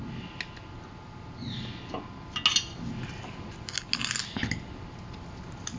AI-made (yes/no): no